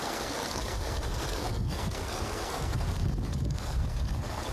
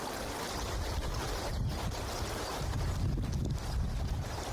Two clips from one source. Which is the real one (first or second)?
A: second